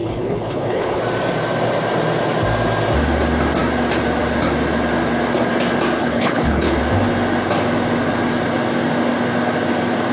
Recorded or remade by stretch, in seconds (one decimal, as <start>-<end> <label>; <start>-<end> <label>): 0.0-1.0 remade; 1.0-6.0 recorded; 6.0-6.8 remade; 6.8-10.1 recorded